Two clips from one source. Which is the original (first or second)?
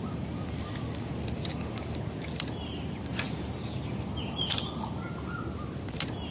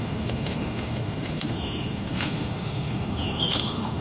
first